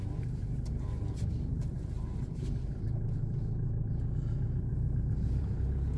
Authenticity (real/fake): fake